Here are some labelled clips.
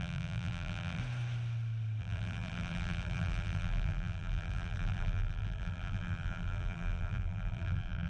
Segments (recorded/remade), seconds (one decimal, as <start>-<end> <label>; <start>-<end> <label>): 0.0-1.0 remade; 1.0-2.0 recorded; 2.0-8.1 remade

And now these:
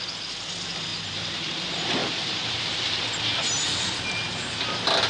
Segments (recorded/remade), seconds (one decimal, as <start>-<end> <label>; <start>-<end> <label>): 0.0-0.9 recorded; 0.9-1.6 remade; 1.6-2.0 recorded; 2.0-2.9 remade; 2.9-5.1 recorded

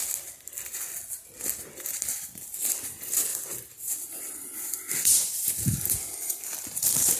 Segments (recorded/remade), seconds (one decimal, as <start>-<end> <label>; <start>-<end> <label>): 0.0-3.3 recorded; 3.3-7.2 remade